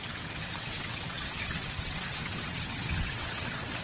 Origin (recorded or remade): remade